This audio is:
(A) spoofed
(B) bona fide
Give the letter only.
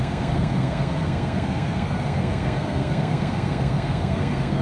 A